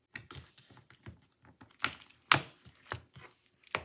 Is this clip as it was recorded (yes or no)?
yes